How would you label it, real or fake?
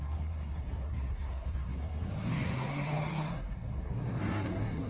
fake